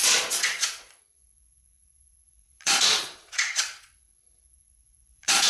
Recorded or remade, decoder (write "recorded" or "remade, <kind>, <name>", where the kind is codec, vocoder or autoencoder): remade, vocoder, Vocos